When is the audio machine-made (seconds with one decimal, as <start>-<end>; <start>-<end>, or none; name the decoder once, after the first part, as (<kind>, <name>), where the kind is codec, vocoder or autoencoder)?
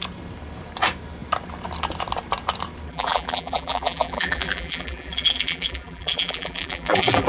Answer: 2.9-7.3 (vocoder, BigVGAN v2)